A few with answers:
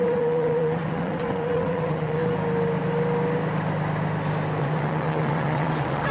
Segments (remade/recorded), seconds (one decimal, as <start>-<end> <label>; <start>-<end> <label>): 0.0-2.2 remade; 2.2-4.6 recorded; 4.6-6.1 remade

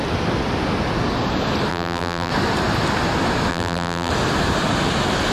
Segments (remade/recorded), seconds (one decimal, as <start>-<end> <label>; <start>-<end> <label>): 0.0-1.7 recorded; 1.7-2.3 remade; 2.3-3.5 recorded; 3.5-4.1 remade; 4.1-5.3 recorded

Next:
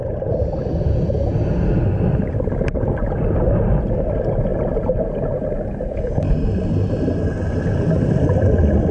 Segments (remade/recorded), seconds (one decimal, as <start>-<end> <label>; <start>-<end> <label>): 0.0-8.9 recorded